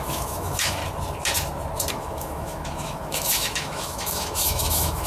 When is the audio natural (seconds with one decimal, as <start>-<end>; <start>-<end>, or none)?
0.8-1.9